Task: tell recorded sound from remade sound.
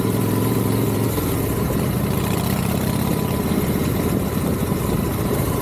remade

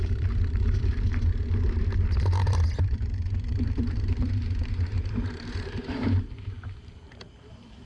remade